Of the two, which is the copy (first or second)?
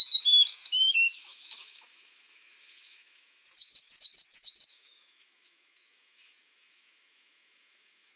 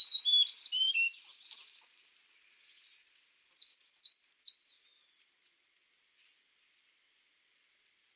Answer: first